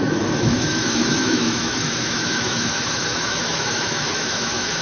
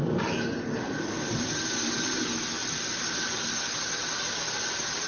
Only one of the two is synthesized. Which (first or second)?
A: first